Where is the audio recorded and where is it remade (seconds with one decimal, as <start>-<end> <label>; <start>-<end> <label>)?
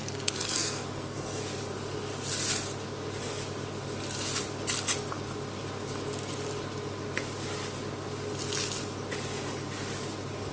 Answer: 0.0-1.4 remade; 1.4-10.5 recorded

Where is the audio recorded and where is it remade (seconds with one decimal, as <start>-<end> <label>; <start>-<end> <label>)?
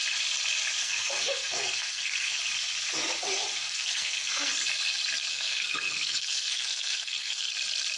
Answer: 0.0-0.8 recorded; 0.8-2.4 remade; 2.4-3.6 recorded; 3.6-4.5 remade; 4.5-5.3 recorded; 5.3-7.5 remade; 7.5-8.0 recorded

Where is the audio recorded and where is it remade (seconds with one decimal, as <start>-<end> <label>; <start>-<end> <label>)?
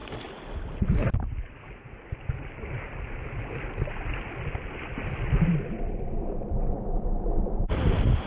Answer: 0.0-8.3 recorded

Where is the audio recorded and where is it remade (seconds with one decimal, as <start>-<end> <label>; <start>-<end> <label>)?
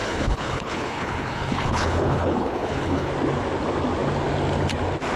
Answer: 0.0-3.1 remade; 3.1-5.2 recorded